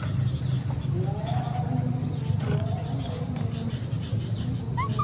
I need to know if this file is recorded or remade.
recorded